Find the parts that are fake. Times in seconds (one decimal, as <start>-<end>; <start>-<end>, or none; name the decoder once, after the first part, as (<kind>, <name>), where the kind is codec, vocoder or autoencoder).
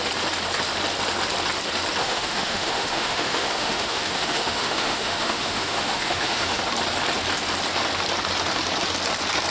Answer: 2.0-6.6 (autoencoder, DAC-VAE)